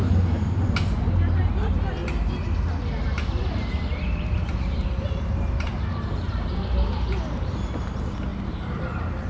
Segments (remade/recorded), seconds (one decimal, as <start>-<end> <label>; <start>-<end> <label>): 0.0-3.4 recorded; 3.4-7.5 remade; 7.5-8.3 recorded; 8.3-8.8 remade; 8.8-9.3 recorded